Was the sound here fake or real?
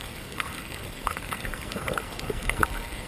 fake